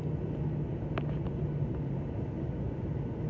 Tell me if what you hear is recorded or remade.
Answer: recorded